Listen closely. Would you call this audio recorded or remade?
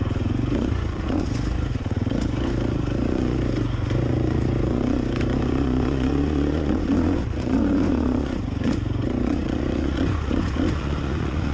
remade